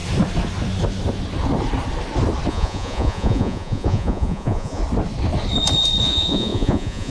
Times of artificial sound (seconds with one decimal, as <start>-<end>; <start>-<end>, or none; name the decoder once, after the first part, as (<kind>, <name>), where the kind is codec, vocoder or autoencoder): 2.5-4.8 (vocoder, Vocos); 6.0-7.1